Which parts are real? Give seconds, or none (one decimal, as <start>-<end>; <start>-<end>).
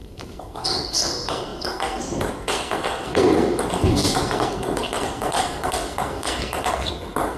none